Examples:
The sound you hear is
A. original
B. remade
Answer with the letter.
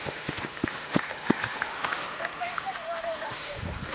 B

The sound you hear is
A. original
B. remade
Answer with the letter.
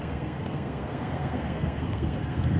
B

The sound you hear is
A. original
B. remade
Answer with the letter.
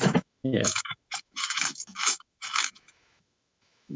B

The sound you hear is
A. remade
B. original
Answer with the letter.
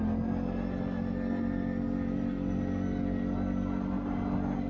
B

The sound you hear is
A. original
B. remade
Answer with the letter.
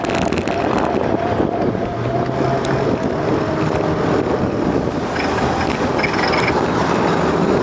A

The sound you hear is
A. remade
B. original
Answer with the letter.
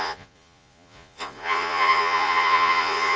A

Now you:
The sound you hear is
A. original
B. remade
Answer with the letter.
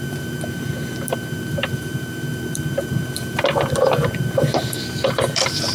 B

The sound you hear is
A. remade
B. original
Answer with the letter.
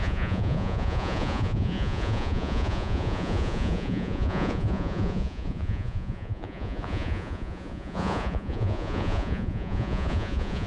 A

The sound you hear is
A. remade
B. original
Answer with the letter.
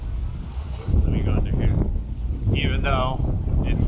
B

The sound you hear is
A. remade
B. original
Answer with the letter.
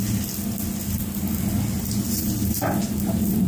B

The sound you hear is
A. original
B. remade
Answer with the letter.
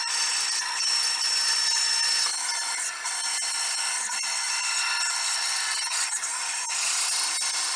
A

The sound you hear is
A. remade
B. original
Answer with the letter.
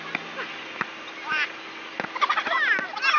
B